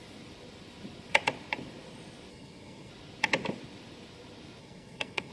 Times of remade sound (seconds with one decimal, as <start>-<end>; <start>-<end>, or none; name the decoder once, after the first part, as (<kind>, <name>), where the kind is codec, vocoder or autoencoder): 2.3-2.9 (codec, SNAC); 4.6-5.3